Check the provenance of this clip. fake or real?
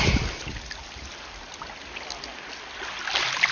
real